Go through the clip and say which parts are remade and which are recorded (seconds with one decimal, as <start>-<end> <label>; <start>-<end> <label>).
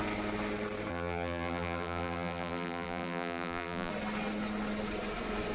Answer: 0.0-0.9 recorded; 0.9-3.9 remade; 3.9-5.5 recorded